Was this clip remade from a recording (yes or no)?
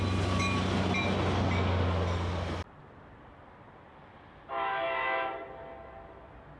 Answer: no